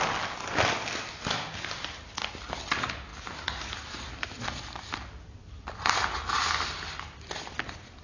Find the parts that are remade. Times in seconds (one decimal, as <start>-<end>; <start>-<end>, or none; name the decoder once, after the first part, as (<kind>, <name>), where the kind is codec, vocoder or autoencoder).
none